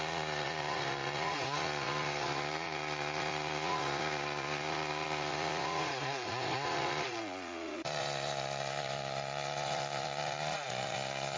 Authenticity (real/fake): fake